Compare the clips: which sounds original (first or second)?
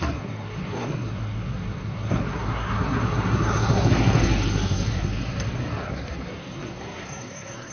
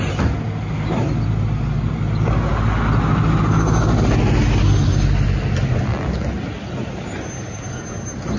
second